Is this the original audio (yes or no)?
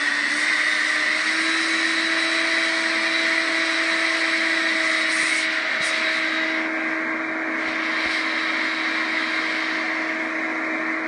yes